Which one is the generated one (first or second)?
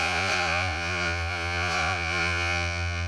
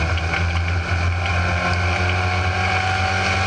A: first